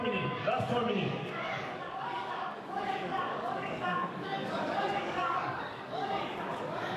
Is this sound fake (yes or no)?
yes